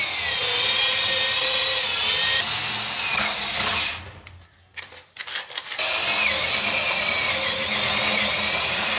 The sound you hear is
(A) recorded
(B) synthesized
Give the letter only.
A